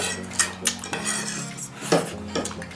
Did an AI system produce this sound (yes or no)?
no